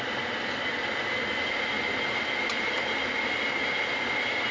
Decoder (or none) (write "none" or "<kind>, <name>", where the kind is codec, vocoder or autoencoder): none